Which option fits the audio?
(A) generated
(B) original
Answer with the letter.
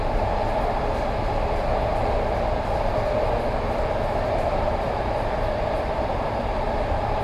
B